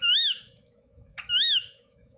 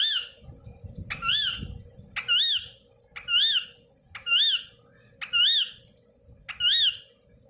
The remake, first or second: first